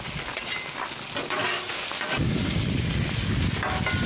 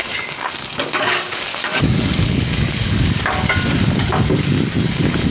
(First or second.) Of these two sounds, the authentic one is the first